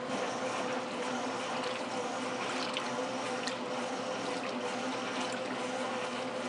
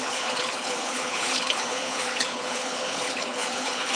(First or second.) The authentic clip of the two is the first